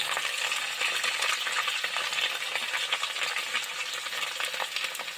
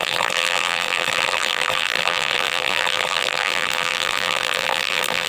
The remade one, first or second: second